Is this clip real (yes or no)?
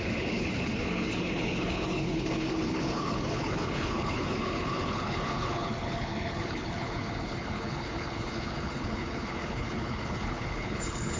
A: no